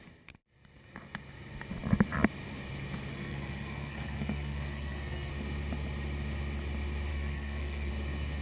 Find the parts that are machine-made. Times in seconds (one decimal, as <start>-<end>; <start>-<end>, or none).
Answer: 3.1-5.3; 7.1-7.9